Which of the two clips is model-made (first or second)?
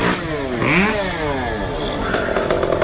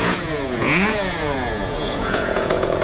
second